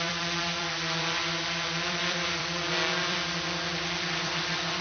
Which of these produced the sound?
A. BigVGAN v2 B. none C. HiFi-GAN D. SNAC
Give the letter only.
A